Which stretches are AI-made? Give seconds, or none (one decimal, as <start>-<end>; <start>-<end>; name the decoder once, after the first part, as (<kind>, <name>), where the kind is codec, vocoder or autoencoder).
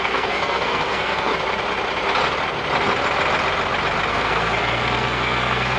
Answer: 0.0-1.3 (codec, SNAC); 4.1-5.8